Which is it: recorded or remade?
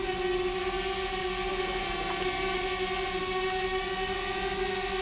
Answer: recorded